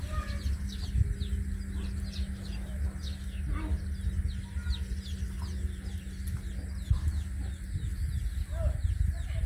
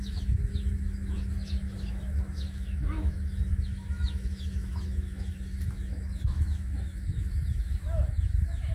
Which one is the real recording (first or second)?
first